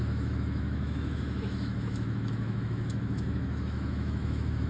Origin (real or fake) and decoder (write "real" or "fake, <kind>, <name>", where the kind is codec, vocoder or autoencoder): fake, autoencoder, DAC-VAE